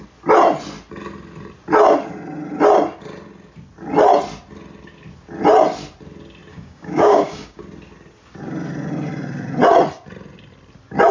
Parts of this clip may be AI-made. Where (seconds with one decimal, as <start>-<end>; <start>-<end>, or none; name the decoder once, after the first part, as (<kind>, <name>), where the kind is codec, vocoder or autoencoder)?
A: 6.5-7.6 (codec, DAC)